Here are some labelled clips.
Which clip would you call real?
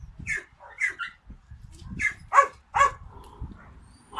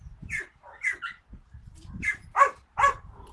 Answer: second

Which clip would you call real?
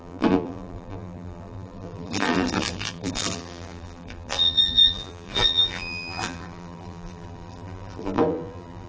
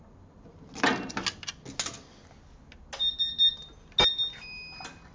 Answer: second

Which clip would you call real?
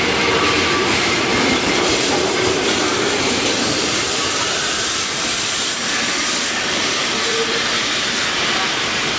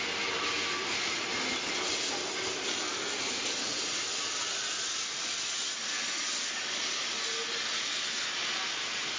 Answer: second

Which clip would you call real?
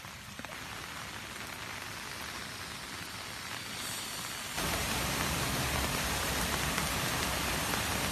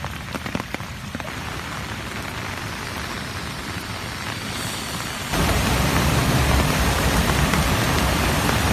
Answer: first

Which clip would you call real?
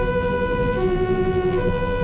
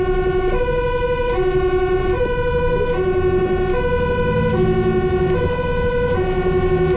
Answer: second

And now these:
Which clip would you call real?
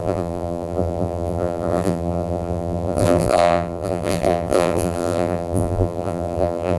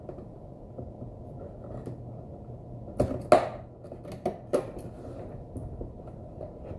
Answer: second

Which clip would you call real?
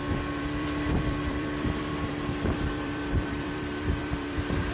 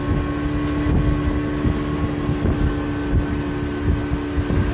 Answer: second